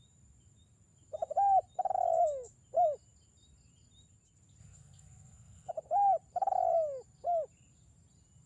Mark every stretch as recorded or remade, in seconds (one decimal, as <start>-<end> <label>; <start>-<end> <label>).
0.0-4.6 recorded; 4.6-5.7 remade; 5.7-8.5 recorded